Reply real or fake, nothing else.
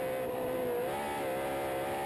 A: real